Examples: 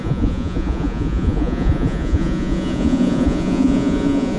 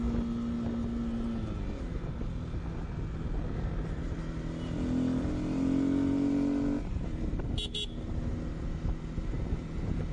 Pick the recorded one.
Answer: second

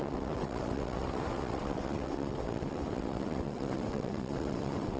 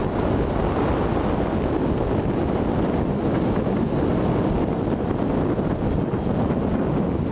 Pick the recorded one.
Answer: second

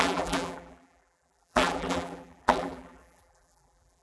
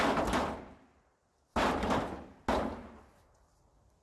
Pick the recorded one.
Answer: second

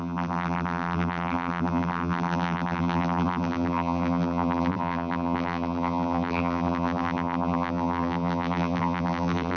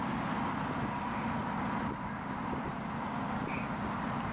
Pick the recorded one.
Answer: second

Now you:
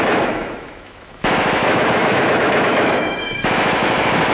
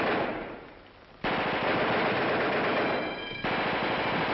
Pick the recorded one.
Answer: second